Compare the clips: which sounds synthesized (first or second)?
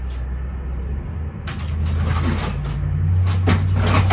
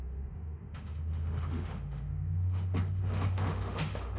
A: second